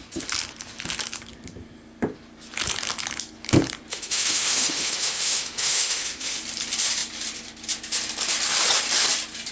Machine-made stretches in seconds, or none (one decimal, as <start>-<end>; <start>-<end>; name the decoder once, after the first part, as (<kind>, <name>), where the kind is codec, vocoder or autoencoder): 3.9-6.4 (autoencoder, DAC-VAE)